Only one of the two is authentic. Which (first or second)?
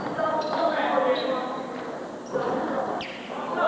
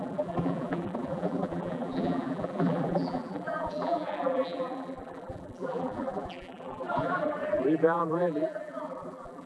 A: first